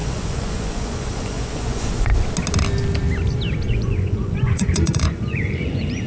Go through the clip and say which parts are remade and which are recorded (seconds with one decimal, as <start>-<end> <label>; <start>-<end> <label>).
0.0-2.1 remade; 2.1-3.7 recorded; 3.7-6.1 remade

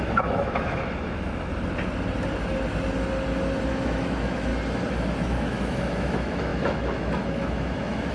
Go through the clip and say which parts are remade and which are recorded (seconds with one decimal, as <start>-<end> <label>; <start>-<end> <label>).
0.0-1.5 remade; 1.5-3.7 recorded; 3.7-4.5 remade; 4.5-5.2 recorded; 5.2-8.1 remade

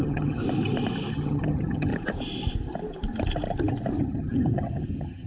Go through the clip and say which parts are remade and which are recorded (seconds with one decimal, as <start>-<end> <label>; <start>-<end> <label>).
0.0-0.4 remade; 0.4-1.1 recorded; 1.1-1.9 remade; 1.9-4.0 recorded; 4.0-5.3 remade